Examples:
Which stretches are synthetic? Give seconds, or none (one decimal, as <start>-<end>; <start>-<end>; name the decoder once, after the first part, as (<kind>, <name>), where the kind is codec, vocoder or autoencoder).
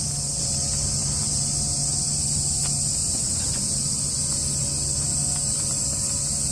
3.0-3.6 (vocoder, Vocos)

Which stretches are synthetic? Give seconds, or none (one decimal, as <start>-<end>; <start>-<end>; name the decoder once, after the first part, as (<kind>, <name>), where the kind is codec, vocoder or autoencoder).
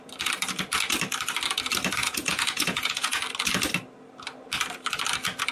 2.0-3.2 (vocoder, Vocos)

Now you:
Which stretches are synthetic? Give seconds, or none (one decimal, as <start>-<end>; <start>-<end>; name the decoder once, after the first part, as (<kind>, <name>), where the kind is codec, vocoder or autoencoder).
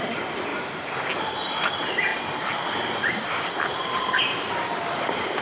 0.5-1.2 (vocoder, BigVGAN v2); 2.1-4.8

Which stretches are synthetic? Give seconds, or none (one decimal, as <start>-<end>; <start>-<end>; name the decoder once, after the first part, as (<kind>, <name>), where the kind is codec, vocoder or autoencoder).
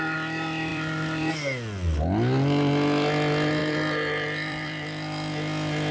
0.7-1.3 (vocoder, BigVGAN v2); 3.6-5.3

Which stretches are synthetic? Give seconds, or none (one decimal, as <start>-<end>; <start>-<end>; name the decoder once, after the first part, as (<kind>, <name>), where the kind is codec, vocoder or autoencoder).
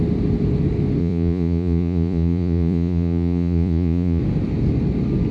1.0-4.2 (vocoder, Vocos)